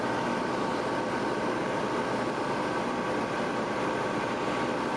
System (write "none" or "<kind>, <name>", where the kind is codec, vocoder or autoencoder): none